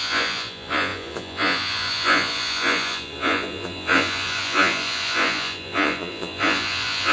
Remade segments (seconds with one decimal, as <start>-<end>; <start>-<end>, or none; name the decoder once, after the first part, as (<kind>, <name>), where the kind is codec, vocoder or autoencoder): 0.0-7.1 (vocoder, Vocos)